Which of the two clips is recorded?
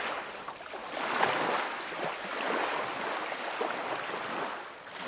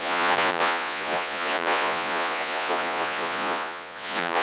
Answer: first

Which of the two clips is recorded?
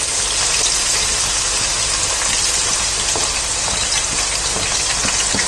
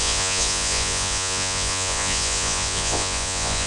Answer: first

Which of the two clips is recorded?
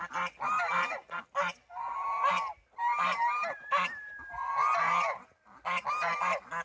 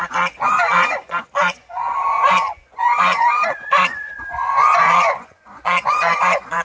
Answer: first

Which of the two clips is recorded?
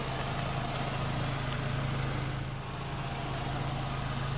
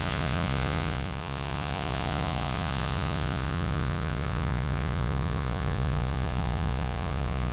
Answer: first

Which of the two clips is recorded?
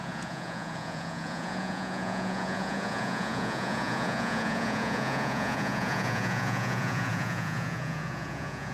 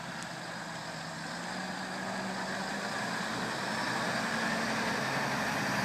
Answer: second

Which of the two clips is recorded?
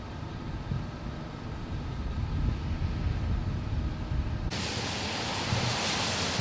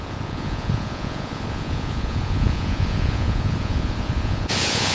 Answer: first